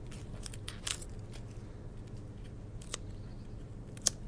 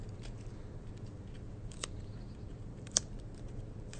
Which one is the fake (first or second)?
second